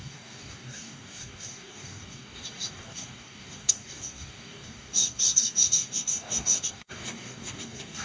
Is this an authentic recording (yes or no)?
no